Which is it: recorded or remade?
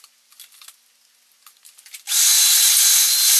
recorded